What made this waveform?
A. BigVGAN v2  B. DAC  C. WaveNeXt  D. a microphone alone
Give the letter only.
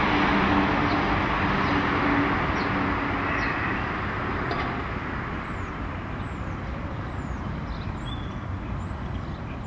D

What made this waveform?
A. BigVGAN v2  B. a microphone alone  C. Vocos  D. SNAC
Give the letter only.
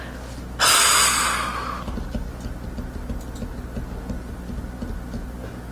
B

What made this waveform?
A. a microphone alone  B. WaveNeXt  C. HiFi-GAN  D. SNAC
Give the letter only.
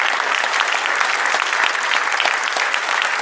A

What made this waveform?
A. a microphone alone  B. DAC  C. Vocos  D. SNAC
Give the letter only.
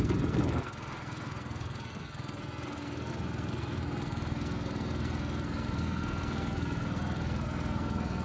D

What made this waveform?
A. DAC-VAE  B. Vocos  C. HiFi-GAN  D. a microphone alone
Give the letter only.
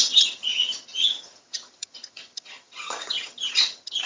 C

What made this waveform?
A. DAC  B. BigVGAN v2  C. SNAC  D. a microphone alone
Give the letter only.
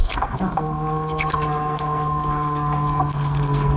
C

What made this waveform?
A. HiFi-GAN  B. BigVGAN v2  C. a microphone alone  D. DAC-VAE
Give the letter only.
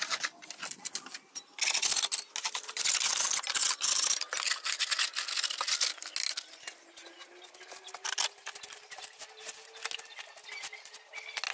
C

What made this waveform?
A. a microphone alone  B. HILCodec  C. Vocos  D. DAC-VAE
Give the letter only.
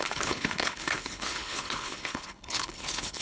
B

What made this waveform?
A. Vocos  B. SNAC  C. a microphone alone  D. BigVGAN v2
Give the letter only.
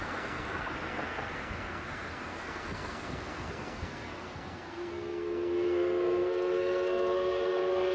B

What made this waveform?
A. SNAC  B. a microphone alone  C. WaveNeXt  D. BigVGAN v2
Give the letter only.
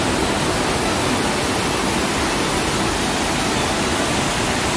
B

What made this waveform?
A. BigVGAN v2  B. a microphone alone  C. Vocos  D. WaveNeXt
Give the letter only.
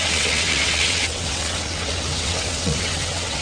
D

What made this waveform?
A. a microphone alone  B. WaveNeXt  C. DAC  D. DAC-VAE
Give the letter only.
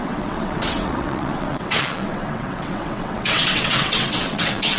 B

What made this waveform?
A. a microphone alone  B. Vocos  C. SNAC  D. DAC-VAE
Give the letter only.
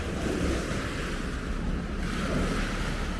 A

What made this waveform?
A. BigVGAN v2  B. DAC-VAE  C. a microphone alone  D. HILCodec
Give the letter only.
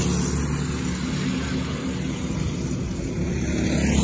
C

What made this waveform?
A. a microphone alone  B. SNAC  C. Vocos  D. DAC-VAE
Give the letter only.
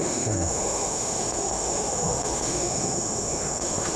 D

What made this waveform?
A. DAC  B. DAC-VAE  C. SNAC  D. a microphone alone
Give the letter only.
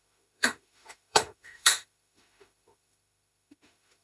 B